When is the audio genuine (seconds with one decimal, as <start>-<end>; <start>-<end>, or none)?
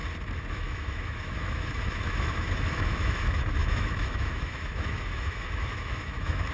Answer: 0.0-0.5